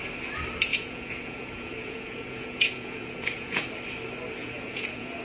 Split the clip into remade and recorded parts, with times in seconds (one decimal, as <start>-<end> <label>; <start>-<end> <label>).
0.0-0.7 recorded; 0.7-3.7 remade; 3.7-4.4 recorded; 4.4-5.2 remade